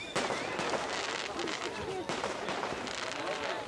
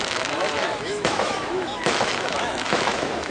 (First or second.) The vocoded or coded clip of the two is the second